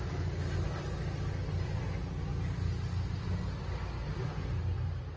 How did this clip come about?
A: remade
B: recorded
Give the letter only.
B